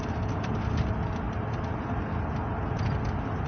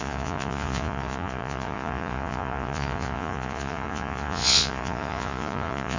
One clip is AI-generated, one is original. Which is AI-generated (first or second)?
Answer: second